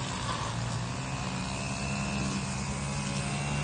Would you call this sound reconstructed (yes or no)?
no